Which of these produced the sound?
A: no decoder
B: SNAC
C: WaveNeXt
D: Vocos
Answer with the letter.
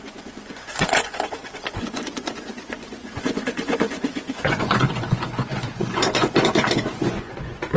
D